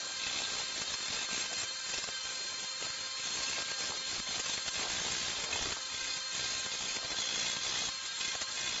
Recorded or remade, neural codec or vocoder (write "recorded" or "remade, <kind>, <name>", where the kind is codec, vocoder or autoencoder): recorded